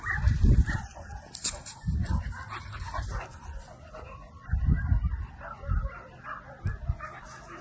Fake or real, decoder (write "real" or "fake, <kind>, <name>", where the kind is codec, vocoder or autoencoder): real